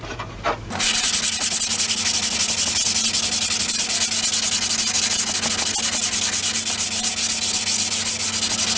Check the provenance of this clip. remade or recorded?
recorded